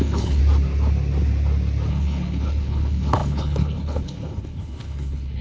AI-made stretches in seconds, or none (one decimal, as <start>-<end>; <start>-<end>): 0.0-0.4; 1.9-5.4